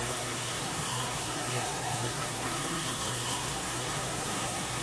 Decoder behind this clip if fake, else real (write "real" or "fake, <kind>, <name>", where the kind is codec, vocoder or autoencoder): fake, codec, SNAC